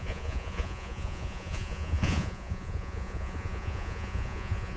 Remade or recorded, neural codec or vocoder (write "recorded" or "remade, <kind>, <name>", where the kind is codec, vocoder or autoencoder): remade, vocoder, Vocos